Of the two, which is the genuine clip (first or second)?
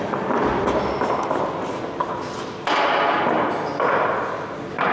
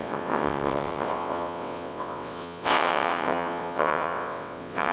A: first